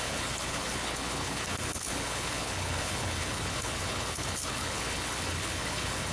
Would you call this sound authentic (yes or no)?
no